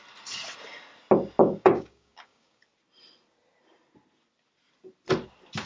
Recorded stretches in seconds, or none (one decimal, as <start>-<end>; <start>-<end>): 0.0-1.4; 2.6-5.7